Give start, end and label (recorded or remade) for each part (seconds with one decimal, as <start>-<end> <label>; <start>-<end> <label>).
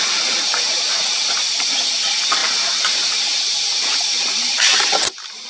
0.0-5.5 recorded